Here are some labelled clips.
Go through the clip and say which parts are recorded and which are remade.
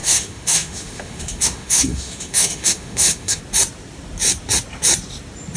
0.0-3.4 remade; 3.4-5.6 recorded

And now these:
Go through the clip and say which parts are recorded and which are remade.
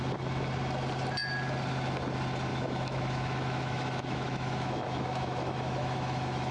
0.0-2.5 recorded; 2.5-6.5 remade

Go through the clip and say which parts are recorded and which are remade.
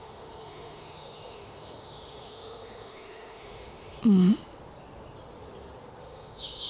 0.0-4.0 remade; 4.0-6.0 recorded; 6.0-6.7 remade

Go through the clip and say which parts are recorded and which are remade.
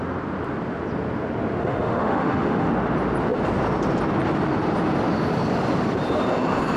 0.0-1.6 recorded; 1.6-2.7 remade; 2.7-6.8 recorded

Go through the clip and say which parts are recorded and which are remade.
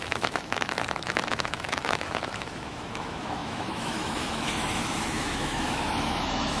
0.0-6.6 remade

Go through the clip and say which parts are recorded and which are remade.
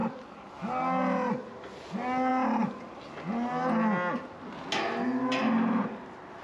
0.0-6.4 recorded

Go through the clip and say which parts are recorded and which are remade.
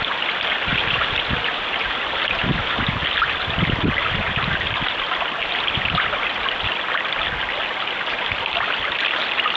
0.0-9.6 recorded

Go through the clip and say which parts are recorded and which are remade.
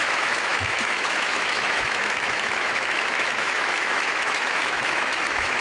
0.0-5.6 remade